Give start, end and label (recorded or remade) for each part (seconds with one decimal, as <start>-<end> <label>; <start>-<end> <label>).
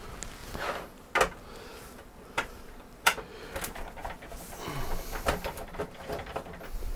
0.0-0.4 recorded; 0.4-1.1 remade; 1.1-1.7 recorded; 1.7-3.3 remade; 3.3-7.0 recorded